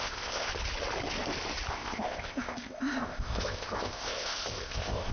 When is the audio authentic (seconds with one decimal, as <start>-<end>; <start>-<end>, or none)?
0.5-1.7